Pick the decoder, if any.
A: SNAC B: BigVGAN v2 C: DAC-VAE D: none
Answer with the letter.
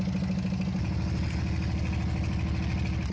D